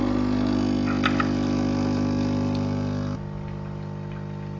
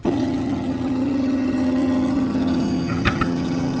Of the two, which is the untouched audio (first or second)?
first